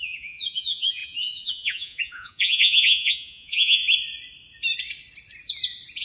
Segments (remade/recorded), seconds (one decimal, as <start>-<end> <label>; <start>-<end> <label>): 0.0-3.8 remade; 3.8-6.0 recorded